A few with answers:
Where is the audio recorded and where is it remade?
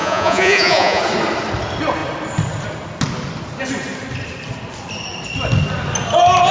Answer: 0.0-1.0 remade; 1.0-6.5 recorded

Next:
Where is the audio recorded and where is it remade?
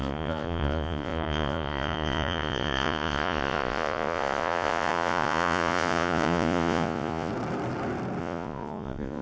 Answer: 0.0-7.3 remade; 7.3-8.2 recorded; 8.2-9.2 remade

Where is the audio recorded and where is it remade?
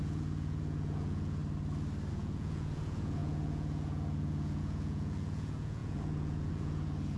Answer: 0.0-1.4 remade; 1.4-2.1 recorded; 2.1-7.2 remade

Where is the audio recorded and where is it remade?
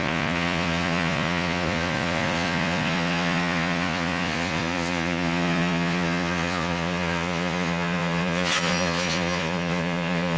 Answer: 0.0-10.4 remade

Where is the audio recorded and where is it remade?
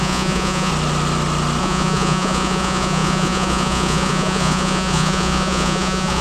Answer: 0.0-0.7 remade; 0.7-1.6 recorded; 1.6-6.2 remade